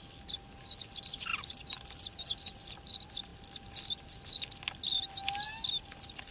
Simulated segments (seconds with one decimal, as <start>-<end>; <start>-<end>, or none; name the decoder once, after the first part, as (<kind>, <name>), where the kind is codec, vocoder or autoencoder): none